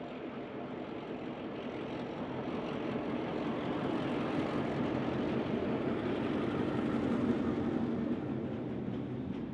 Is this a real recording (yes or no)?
yes